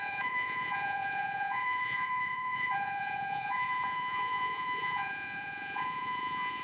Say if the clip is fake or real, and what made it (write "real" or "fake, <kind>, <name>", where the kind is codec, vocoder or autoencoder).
fake, vocoder, Vocos